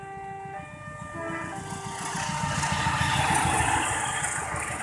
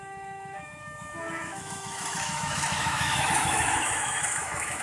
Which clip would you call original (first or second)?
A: first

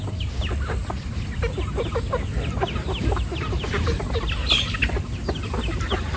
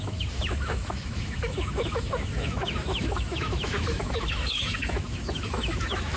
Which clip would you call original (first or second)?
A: first